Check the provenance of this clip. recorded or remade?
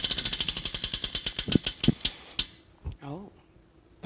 recorded